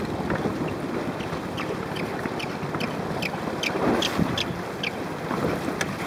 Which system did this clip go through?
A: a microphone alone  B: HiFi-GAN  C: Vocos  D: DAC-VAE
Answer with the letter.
A